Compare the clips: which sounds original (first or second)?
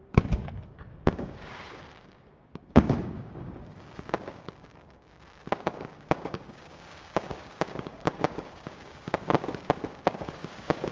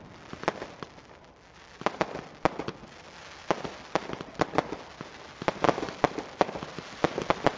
second